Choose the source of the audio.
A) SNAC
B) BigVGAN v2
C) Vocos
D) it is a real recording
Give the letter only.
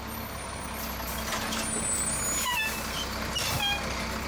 D